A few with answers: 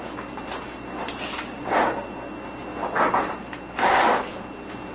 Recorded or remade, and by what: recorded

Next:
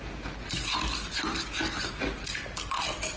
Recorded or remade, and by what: recorded